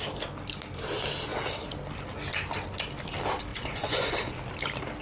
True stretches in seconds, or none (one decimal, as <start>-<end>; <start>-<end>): 0.0-3.5; 4.2-5.0